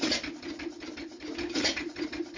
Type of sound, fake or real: real